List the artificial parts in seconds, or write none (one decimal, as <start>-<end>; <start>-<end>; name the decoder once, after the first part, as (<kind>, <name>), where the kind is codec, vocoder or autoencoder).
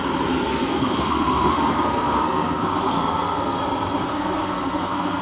0.5-3.6 (codec, SNAC); 4.1-5.2